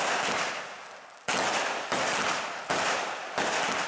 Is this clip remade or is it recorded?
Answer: recorded